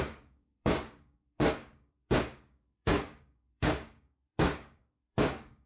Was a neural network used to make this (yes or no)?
yes